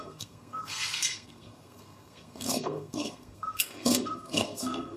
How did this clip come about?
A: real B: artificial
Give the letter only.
B